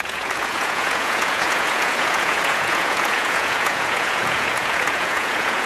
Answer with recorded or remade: remade